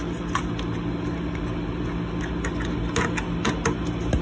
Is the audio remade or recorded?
recorded